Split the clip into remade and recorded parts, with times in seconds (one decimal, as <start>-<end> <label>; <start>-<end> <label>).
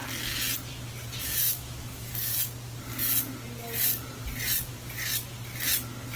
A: 0.0-1.2 recorded; 1.2-2.3 remade; 2.3-6.2 recorded